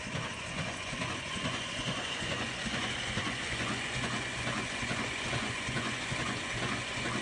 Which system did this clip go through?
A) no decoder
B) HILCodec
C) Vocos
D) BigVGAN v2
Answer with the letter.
C